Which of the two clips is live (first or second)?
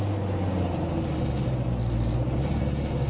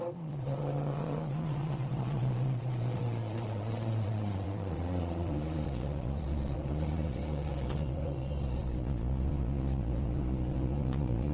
first